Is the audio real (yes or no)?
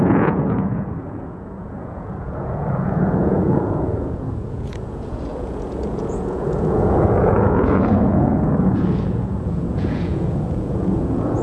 no